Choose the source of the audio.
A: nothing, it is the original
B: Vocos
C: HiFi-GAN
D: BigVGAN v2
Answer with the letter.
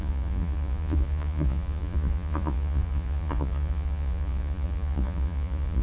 B